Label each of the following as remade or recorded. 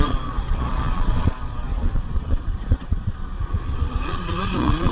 remade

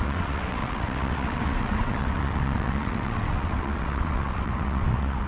remade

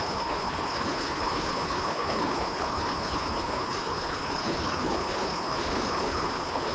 remade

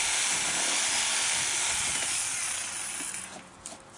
recorded